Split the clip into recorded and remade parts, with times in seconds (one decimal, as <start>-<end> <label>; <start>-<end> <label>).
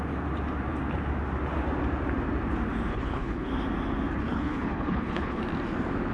0.0-2.9 recorded; 2.9-3.5 remade; 3.5-4.2 recorded; 4.2-5.4 remade; 5.4-6.1 recorded